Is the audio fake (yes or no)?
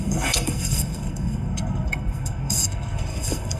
yes